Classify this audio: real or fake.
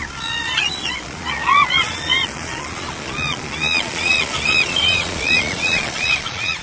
fake